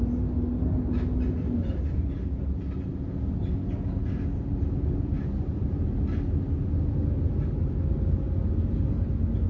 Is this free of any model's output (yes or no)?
yes